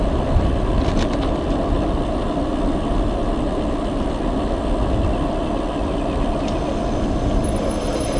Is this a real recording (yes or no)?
yes